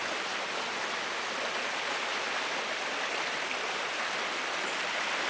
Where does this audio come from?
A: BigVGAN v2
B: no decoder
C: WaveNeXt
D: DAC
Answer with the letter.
B